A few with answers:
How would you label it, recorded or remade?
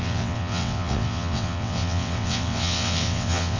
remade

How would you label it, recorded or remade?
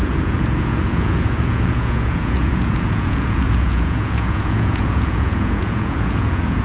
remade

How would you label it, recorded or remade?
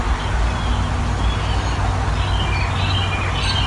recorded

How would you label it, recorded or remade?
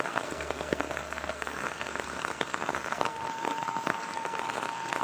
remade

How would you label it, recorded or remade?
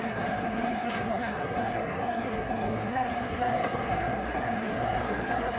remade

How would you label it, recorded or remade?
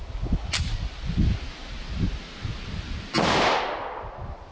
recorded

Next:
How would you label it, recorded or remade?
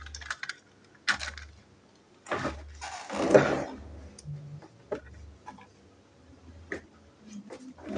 recorded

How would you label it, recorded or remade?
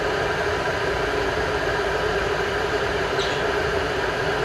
recorded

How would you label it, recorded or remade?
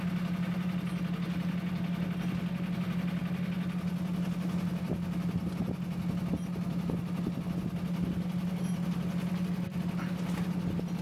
recorded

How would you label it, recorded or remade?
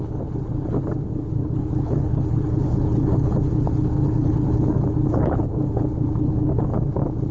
remade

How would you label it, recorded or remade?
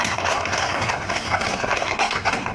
remade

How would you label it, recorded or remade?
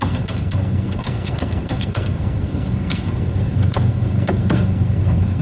remade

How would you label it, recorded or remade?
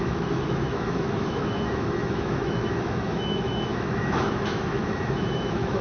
remade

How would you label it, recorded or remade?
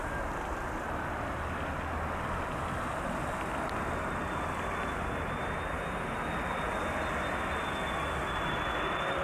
recorded